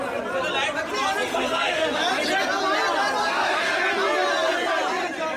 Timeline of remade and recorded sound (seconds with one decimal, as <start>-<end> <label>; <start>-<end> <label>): 0.0-1.3 recorded; 1.3-2.0 remade; 2.0-3.2 recorded; 3.2-3.8 remade; 3.8-5.4 recorded